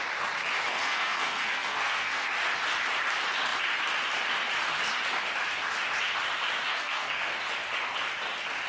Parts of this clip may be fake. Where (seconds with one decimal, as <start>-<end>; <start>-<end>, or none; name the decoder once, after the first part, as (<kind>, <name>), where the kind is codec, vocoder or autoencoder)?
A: 0.7-2.3 (codec, SNAC); 6.7-7.4

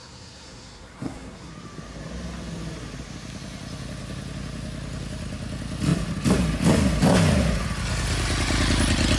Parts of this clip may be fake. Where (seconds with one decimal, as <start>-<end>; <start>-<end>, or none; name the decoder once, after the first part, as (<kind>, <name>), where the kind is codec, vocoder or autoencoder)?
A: 0.0-1.5 (codec, SNAC)

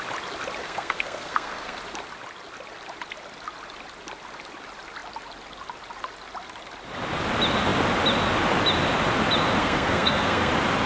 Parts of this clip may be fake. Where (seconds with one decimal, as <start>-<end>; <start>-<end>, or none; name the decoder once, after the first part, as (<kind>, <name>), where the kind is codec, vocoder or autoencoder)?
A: 0.6-1.8 (codec, SNAC); 9.6-10.5

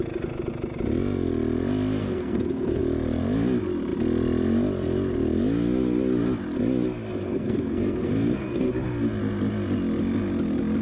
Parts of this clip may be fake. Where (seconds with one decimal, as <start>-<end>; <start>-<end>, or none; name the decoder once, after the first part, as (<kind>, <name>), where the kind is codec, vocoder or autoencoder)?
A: 2.0-2.8 (codec, SNAC); 7.2-8.7

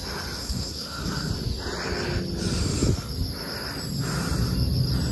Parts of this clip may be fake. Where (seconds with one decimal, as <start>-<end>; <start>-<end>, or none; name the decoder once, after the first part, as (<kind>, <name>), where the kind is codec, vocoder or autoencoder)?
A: 0.4-1.3 (codec, SNAC)

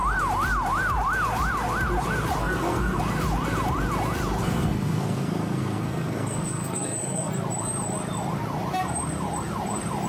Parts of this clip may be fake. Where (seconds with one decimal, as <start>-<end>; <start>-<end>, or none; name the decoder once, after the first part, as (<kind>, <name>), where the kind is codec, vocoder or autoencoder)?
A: 2.4-3.0 (codec, SNAC); 4.4-7.3